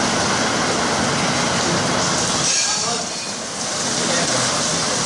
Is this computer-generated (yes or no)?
no